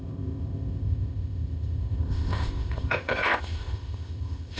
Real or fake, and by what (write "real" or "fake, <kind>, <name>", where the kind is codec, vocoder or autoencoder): fake, codec, ZipCodec